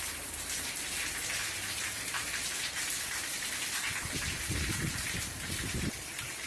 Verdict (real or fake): fake